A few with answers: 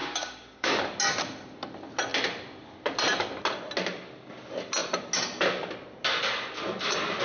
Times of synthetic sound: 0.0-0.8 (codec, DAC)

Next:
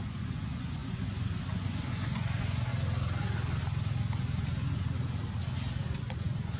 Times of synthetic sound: 0.0-2.7 (vocoder, Vocos); 6.0-6.6